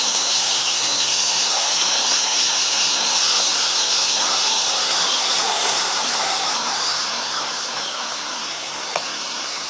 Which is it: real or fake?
fake